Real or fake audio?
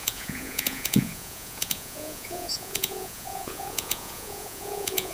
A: fake